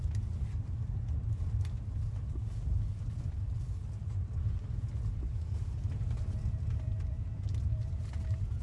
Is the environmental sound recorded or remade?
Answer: recorded